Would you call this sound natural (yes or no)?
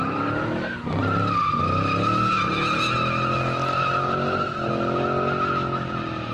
yes